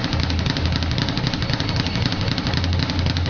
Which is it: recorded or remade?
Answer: recorded